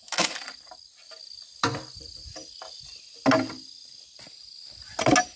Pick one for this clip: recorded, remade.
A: recorded